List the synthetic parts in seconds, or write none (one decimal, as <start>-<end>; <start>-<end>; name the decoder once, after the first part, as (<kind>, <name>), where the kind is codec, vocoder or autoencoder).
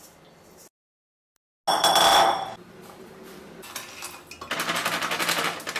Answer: none